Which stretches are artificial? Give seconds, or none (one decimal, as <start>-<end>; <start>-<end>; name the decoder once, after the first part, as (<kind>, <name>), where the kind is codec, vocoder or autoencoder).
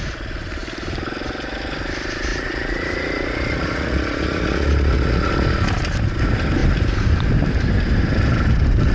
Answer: 2.3-5.3 (vocoder, Vocos)